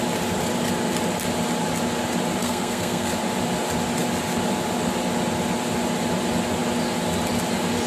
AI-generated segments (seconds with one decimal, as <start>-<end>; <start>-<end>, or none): 2.4-3.1